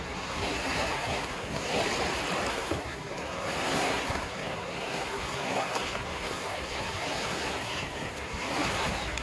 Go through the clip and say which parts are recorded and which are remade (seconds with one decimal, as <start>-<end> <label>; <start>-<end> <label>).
0.0-1.8 remade; 1.8-2.5 recorded; 2.5-9.2 remade